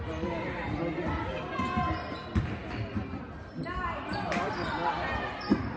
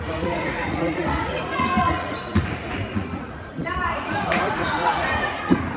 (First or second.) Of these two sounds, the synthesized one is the second